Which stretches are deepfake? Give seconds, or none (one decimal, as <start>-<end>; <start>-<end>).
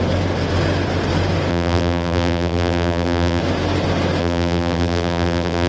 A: 1.5-3.4; 4.2-5.7